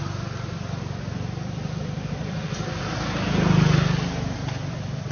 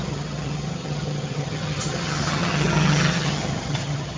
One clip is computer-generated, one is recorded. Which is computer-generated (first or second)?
second